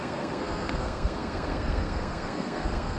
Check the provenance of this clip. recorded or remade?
remade